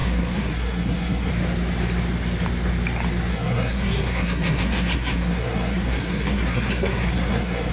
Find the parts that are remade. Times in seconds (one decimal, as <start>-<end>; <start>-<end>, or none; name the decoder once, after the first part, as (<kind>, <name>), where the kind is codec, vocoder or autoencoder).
0.0-1.3 (codec, SNAC); 3.3-7.7